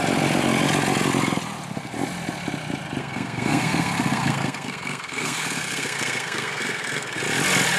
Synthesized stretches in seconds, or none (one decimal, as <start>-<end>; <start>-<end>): 3.0-7.2